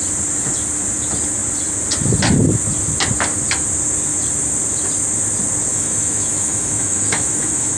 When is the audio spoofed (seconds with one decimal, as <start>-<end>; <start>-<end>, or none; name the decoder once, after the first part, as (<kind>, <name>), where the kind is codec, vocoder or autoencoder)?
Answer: 5.7-7.8 (autoencoder, DAC-VAE)